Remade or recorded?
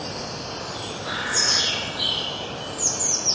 recorded